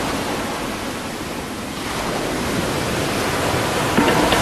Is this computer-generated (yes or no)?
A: no